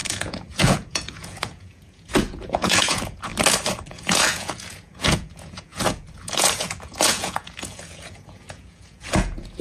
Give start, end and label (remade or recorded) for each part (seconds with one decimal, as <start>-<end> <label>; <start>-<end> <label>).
0.0-3.3 remade; 3.3-3.9 recorded; 3.9-9.6 remade

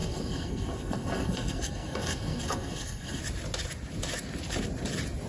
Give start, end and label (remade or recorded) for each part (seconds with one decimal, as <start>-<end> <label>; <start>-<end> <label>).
0.0-3.2 remade; 3.2-5.3 recorded

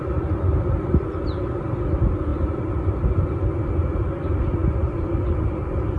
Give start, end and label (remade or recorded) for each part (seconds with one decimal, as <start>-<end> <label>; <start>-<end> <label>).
0.0-6.0 recorded

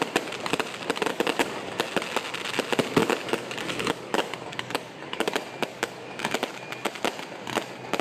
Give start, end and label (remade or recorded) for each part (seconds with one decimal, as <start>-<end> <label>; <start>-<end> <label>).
0.0-1.1 recorded; 1.1-1.9 remade; 1.9-3.0 recorded; 3.0-5.3 remade; 5.3-5.7 recorded; 5.7-6.3 remade; 6.3-8.0 recorded

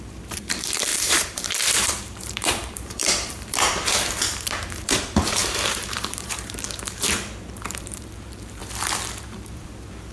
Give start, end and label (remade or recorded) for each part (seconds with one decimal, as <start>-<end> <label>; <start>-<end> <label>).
0.0-8.6 remade; 8.6-9.2 recorded; 9.2-10.1 remade